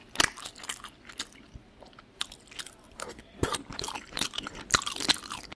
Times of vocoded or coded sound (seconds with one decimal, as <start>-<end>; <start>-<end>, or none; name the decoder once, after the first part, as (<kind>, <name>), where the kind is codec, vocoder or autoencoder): 2.9-5.6 (vocoder, BigVGAN v2)

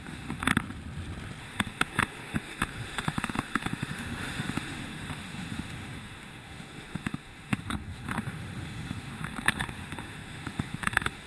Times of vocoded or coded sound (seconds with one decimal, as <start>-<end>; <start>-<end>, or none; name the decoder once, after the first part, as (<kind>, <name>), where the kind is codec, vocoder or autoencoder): 0.0-0.5 (autoencoder, DAC-VAE); 1.4-11.3

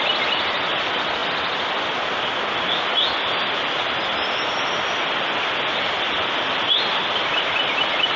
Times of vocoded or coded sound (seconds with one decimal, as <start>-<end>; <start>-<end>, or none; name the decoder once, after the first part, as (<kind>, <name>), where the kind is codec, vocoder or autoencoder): none

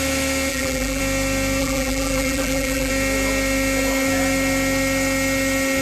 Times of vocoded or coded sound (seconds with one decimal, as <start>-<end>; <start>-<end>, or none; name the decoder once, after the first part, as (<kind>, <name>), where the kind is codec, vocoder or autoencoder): 0.5-1.0 (vocoder, BigVGAN v2); 1.6-2.9

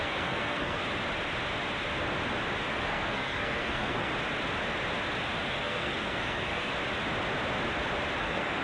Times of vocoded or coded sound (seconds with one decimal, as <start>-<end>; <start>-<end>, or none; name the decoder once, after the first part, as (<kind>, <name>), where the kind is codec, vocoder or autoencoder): 0.0-0.8 (codec, SNAC); 2.7-4.1; 5.5-6.7; 8.2-8.6

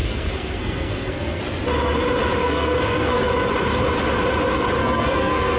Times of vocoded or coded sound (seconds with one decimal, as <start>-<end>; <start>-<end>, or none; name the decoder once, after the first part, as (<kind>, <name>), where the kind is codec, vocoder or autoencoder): 0.0-1.4 (codec, SNAC); 2.4-3.2; 4.8-5.6